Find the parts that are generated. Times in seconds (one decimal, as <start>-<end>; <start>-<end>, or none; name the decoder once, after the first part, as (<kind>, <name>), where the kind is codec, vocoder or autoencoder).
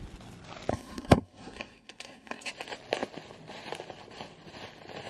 0.7-2.5 (codec, SNAC)